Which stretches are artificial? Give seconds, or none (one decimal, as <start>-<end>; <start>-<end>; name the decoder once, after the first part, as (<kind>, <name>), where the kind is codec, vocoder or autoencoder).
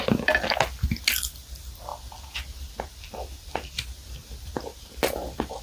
none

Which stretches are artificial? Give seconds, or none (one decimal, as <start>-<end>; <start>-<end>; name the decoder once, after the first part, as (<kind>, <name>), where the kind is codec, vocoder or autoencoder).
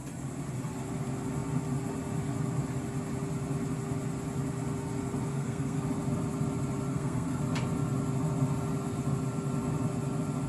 5.3-5.8 (codec, SNAC); 6.9-7.4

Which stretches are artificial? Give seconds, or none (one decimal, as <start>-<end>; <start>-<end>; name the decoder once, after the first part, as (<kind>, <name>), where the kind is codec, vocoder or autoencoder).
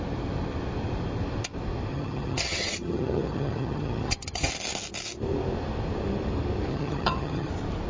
1.9-4.5 (vocoder, HiFi-GAN); 6.7-7.5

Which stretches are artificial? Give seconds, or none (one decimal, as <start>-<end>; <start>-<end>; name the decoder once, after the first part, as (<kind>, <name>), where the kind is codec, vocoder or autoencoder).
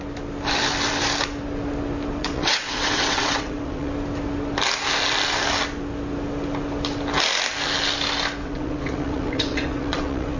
2.2-3.9 (vocoder, WaveNeXt); 8.4-10.4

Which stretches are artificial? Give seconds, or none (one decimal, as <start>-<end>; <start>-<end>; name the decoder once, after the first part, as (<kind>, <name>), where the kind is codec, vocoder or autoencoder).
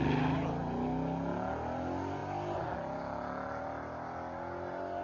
none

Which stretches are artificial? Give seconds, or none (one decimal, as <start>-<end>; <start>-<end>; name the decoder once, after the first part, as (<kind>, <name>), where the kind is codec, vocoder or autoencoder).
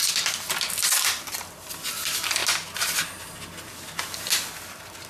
none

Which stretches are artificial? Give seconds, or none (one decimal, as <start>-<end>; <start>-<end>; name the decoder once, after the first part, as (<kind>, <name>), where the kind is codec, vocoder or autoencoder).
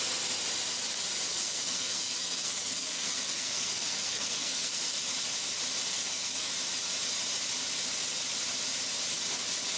1.3-5.0 (codec, SNAC); 5.9-6.5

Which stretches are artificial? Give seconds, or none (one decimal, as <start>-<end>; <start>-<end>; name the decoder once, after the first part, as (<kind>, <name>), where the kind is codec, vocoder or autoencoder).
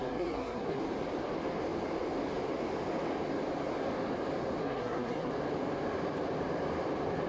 0.0-0.8 (codec, SNAC); 4.6-5.3